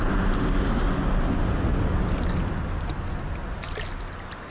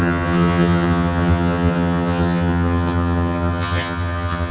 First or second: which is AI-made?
second